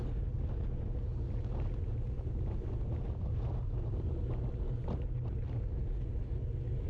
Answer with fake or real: real